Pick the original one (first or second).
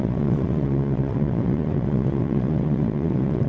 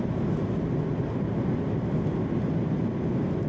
second